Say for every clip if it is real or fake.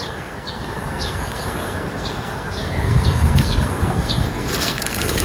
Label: fake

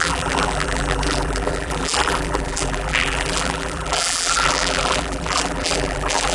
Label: fake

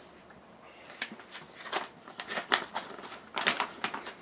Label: fake